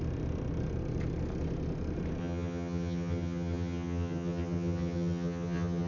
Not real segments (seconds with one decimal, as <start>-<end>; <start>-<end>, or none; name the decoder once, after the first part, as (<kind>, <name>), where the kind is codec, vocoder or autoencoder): 2.2-5.9 (vocoder, HiFi-GAN)